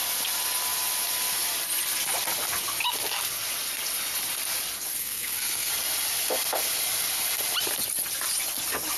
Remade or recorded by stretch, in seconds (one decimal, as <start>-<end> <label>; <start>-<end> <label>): 0.0-5.0 recorded; 5.0-5.7 remade; 5.7-9.0 recorded